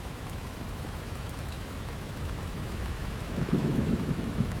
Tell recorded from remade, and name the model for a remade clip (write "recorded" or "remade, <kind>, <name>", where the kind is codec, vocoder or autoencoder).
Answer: remade, autoencoder, DAC-VAE